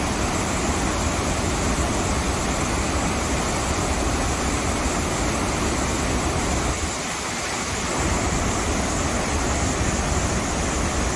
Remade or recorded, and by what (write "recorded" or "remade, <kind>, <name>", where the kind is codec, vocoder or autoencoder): recorded